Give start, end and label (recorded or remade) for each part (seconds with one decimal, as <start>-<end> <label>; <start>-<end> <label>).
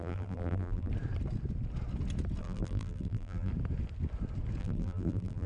0.0-0.9 remade; 0.9-2.4 recorded; 2.4-3.5 remade; 3.5-4.6 recorded; 4.6-5.5 remade